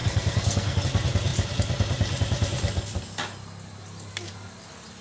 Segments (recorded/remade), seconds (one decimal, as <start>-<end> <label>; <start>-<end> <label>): 0.0-0.8 remade; 0.8-5.0 recorded